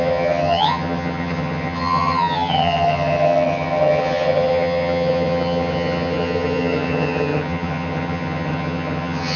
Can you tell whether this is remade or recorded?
remade